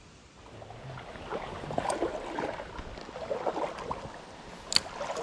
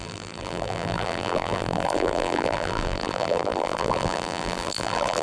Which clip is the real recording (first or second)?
first